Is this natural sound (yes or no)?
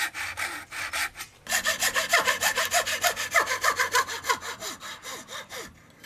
yes